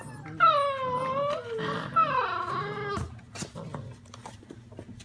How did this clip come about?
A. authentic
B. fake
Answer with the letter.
A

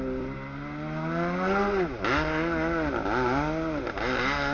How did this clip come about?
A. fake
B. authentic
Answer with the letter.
B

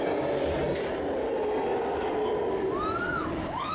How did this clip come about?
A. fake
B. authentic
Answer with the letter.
B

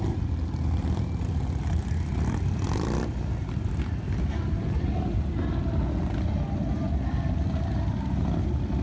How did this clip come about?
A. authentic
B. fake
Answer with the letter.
A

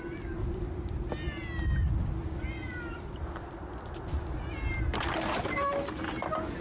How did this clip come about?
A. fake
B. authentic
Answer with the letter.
B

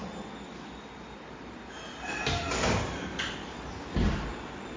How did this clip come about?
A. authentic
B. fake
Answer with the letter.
A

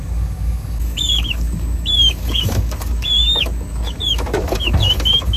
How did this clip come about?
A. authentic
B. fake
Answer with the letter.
B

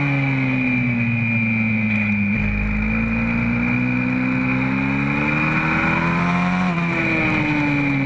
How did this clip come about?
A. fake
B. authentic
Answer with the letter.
B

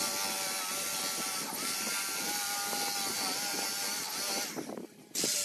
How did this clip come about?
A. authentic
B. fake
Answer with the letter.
A